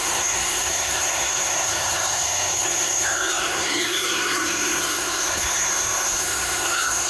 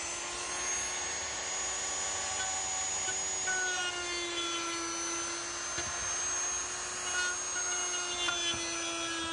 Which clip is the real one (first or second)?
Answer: second